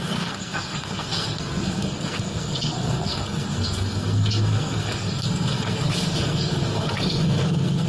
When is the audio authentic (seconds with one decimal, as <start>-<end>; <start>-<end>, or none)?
none